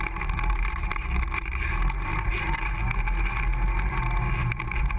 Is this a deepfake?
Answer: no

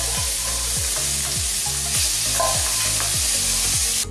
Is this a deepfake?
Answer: no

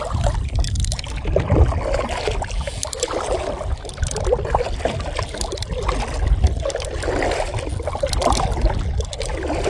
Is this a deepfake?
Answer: no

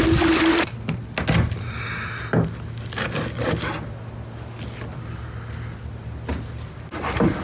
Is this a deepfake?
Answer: no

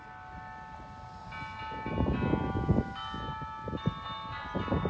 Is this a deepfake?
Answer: no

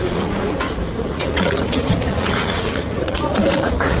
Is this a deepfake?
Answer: yes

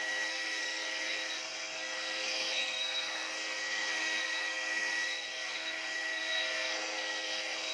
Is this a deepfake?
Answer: yes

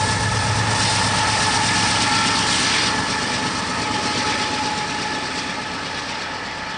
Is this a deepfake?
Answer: no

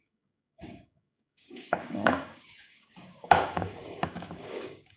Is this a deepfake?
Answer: yes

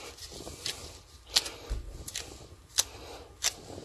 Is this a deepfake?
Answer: no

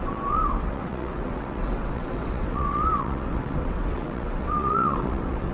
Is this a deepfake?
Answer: yes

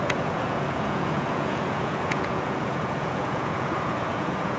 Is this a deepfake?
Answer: yes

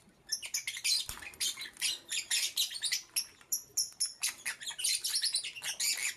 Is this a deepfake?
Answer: no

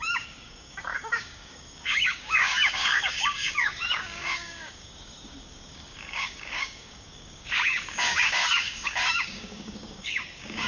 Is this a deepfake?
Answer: yes